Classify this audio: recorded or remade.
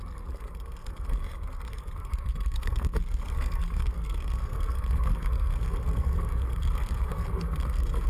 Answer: remade